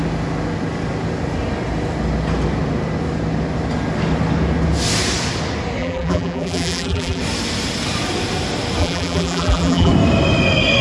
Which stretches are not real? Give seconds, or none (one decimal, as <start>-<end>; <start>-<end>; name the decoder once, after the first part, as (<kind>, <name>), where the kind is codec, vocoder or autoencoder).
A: 5.8-7.2 (vocoder, BigVGAN v2); 8.8-9.9